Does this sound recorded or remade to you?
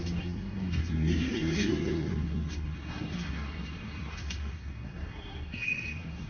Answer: remade